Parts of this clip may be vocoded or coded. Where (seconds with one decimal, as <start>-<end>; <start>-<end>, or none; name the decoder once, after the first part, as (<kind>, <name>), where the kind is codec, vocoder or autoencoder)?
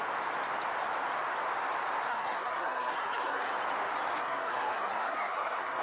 2.1-3.5 (codec, SNAC); 4.2-5.8